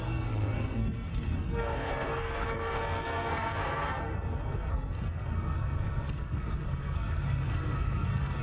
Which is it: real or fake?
fake